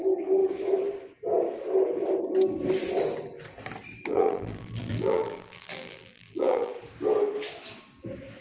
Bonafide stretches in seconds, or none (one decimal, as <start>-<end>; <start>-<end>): 0.0-4.1; 6.7-8.4